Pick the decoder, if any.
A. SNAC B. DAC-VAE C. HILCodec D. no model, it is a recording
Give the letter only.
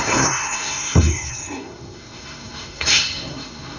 A